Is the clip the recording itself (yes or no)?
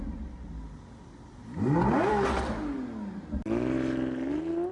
yes